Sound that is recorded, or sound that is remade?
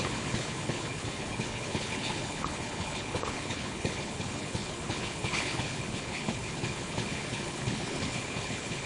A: remade